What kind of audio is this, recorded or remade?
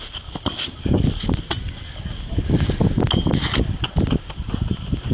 recorded